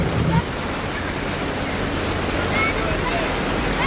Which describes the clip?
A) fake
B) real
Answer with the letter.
B